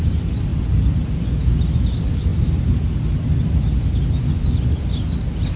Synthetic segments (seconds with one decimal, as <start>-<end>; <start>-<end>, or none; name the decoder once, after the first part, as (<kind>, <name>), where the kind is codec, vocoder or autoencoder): none

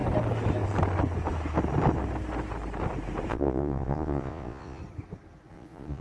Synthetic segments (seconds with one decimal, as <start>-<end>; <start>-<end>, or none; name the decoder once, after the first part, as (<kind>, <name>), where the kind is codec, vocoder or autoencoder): 3.3-4.8 (vocoder, Vocos); 5.5-6.0

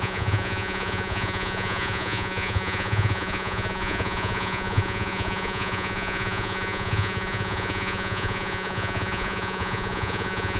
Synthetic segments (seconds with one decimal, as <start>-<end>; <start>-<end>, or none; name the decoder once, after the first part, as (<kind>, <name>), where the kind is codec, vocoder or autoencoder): 0.0-10.6 (vocoder, Vocos)

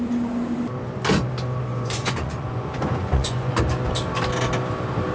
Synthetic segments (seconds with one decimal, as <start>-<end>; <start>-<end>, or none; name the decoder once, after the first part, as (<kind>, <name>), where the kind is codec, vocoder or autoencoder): 1.7-3.6 (vocoder, Vocos)

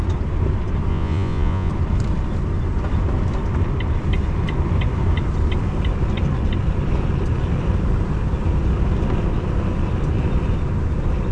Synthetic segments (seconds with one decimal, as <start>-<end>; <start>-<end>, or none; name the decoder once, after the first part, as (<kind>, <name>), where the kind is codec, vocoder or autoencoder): 0.9-1.7 (vocoder, Vocos)

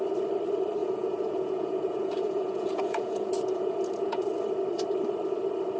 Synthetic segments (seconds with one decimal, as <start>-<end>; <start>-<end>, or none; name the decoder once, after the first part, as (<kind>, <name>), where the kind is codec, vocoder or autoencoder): 0.8-4.3 (vocoder, Vocos)

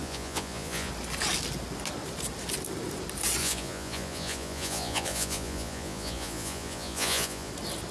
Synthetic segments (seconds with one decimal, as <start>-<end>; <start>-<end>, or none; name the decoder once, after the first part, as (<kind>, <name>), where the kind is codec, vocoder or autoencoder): 0.0-0.9 (vocoder, Vocos); 3.4-7.5

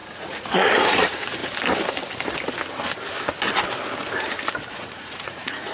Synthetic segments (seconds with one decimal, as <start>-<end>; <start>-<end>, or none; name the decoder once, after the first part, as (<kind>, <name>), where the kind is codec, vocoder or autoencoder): 0.0-1.4 (vocoder, Vocos); 4.7-5.7